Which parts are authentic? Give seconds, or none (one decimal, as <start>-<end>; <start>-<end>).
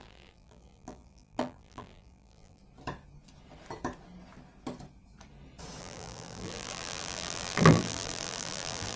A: 2.6-5.8